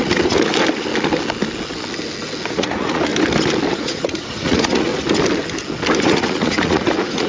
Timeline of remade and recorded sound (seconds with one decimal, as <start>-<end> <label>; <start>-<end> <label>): 0.0-0.5 remade; 0.5-2.5 recorded; 2.5-3.1 remade; 3.1-3.7 recorded; 3.7-4.9 remade; 4.9-6.0 recorded; 6.0-7.3 remade